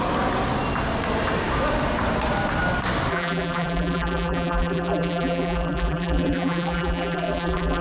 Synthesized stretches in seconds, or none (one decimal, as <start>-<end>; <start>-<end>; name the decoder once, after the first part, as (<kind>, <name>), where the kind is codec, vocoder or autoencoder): 3.1-7.8 (vocoder, BigVGAN v2)